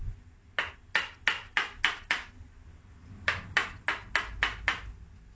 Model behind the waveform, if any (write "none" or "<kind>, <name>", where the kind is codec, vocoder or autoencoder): none